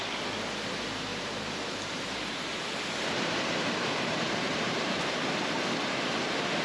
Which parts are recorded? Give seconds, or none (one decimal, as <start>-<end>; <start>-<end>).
0.0-1.1; 5.1-6.6